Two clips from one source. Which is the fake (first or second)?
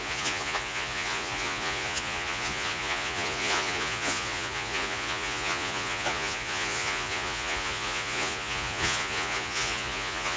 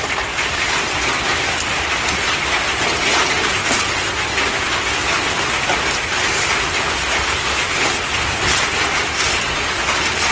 first